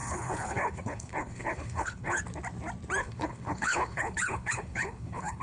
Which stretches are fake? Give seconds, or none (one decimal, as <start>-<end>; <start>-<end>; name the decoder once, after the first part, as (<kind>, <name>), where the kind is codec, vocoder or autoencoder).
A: 0.0-2.2 (codec, HILCodec); 3.0-5.4